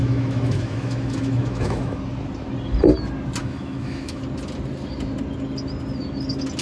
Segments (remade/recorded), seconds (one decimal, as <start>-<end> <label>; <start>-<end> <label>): 0.0-2.0 remade; 2.0-3.4 recorded; 3.4-4.2 remade; 4.2-6.6 recorded

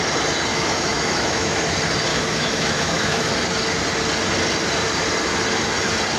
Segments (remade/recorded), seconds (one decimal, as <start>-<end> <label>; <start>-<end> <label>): 0.0-0.5 recorded; 0.5-1.6 remade; 1.6-2.1 recorded; 2.1-3.3 remade; 3.3-6.2 recorded